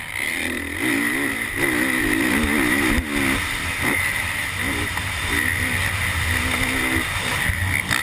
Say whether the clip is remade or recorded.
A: recorded